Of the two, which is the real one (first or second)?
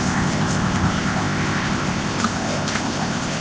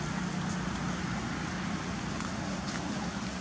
second